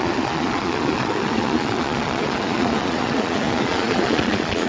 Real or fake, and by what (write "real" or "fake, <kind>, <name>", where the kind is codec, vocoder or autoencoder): fake, vocoder, Vocos